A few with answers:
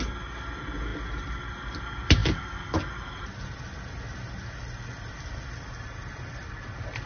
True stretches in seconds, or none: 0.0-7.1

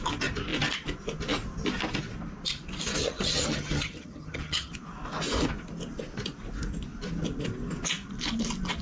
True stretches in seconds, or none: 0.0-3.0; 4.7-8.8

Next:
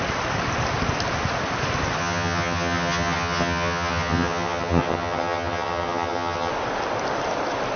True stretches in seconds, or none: 0.0-2.0; 6.5-7.8

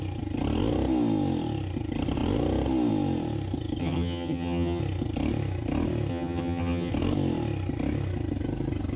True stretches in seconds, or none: 0.0-3.8; 4.8-6.1; 6.9-9.0